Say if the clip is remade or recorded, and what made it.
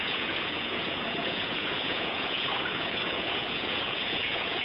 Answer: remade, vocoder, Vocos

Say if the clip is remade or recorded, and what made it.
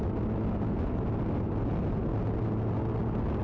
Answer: recorded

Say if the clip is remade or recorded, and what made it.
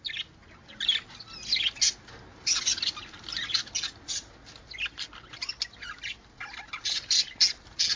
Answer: recorded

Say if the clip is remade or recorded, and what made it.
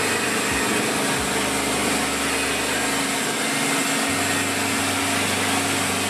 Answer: recorded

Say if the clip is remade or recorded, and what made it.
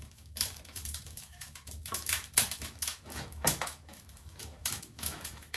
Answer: remade, autoencoder, DAC-VAE